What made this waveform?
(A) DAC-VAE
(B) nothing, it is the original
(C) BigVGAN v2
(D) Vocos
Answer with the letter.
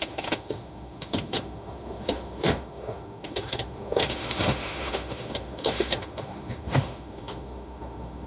A